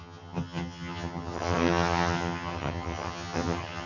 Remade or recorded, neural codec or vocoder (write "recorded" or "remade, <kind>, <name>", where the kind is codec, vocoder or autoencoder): remade, vocoder, HiFi-GAN